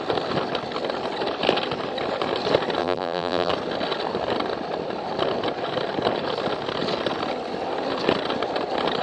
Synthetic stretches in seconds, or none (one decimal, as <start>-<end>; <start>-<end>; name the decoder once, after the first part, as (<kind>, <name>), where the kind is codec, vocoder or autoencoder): 2.8-3.5 (vocoder, BigVGAN v2)